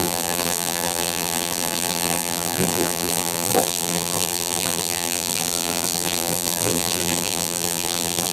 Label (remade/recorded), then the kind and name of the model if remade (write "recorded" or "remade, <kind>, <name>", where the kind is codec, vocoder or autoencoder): remade, vocoder, BigVGAN v2